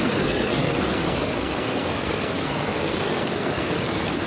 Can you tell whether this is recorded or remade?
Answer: remade